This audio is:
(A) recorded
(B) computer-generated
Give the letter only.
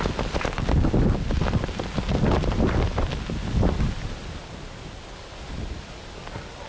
A